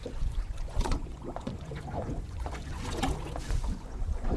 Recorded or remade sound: remade